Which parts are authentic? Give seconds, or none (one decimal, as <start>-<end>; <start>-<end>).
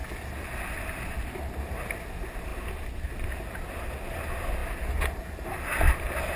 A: 0.0-6.4